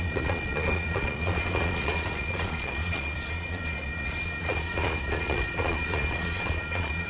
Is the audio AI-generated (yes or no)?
yes